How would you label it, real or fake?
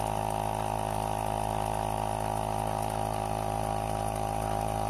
real